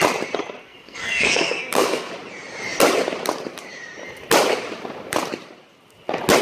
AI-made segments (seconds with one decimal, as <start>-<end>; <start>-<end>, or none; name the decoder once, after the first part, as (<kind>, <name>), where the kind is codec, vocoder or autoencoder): 0.6-2.1 (codec, SNAC)